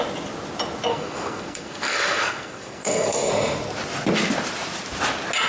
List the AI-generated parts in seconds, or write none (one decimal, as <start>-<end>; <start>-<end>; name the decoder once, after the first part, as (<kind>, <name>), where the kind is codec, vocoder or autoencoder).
0.9-3.3 (codec, SNAC)